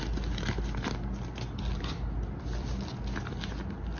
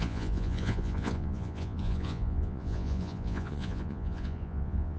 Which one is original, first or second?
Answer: first